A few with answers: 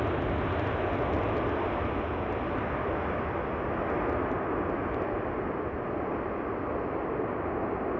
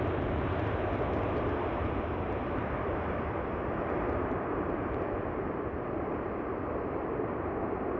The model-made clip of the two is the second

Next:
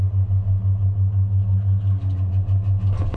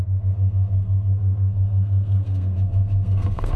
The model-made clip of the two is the second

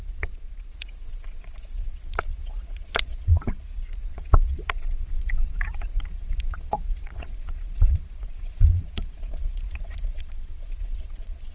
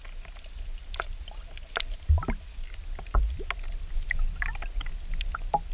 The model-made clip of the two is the first